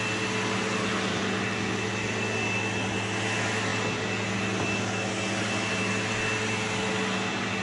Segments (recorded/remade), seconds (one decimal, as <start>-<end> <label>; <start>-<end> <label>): 0.0-7.6 recorded